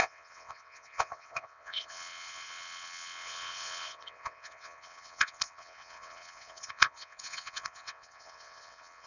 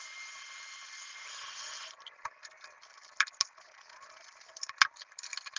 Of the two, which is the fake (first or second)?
first